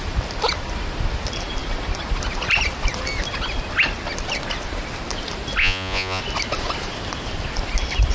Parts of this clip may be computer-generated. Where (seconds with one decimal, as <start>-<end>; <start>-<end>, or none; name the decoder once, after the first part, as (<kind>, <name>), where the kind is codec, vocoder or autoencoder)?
5.6-6.2 (vocoder, Vocos)